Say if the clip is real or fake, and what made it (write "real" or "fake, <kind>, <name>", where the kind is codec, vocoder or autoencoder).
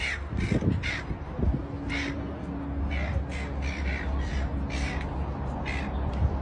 real